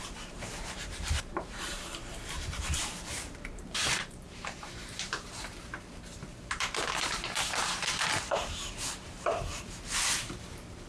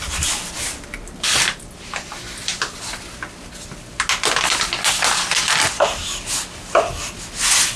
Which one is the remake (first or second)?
first